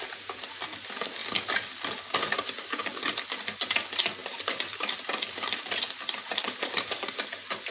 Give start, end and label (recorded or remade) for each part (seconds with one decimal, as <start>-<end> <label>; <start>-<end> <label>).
0.0-1.2 recorded; 1.2-1.9 remade; 1.9-4.2 recorded; 4.2-7.1 remade; 7.1-7.7 recorded

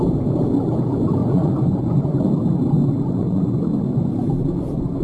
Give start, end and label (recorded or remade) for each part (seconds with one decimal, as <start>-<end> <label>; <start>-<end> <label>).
0.0-1.2 recorded; 1.2-2.3 remade; 2.3-3.2 recorded; 3.2-4.1 remade; 4.1-5.0 recorded

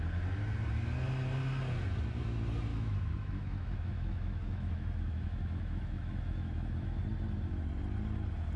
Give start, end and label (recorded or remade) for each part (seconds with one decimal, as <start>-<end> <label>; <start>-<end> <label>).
0.0-2.7 recorded; 2.7-7.0 remade; 7.0-8.6 recorded

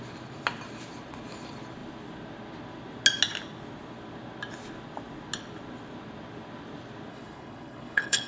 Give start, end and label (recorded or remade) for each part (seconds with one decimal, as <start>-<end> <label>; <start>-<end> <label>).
0.0-7.1 recorded; 7.1-8.3 remade

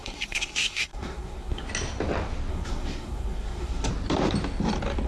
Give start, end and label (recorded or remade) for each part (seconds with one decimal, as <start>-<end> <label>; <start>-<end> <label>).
0.0-1.7 remade; 1.7-2.5 recorded; 2.5-3.9 remade; 3.9-5.1 recorded

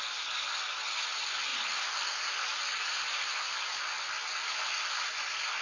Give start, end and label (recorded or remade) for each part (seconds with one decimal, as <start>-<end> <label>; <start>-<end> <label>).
0.0-5.6 recorded